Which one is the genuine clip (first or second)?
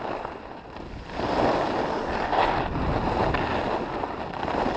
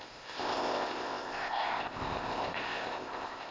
first